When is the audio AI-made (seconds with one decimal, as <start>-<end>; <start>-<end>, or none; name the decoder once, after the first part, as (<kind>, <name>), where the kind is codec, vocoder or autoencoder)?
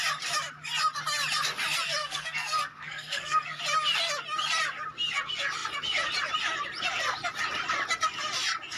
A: 2.0-3.6 (codec, SNAC)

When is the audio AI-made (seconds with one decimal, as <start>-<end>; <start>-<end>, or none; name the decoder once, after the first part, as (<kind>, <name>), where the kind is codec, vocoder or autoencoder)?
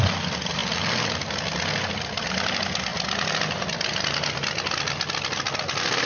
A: none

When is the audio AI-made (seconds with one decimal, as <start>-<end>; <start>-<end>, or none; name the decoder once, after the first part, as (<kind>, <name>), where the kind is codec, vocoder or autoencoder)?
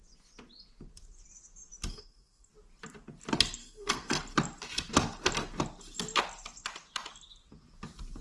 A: 1.9-2.5 (codec, SNAC); 3.6-4.2